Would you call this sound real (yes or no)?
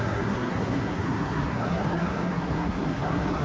no